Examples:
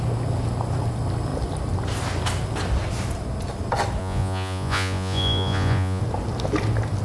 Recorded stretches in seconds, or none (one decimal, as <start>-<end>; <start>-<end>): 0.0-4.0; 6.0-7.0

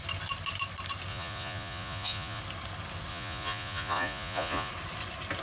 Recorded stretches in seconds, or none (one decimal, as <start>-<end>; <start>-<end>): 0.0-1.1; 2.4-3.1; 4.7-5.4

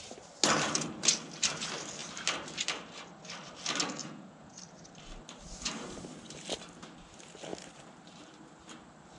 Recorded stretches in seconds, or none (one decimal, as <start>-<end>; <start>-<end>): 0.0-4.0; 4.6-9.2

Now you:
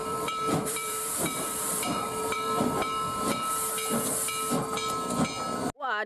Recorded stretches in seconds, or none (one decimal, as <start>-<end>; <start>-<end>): 3.7-6.1